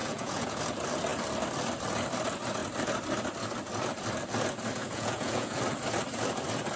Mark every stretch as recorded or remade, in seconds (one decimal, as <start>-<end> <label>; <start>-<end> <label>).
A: 0.0-0.6 remade; 0.6-4.8 recorded; 4.8-5.6 remade; 5.6-6.8 recorded